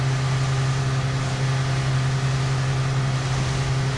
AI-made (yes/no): no